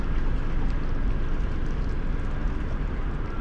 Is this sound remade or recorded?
recorded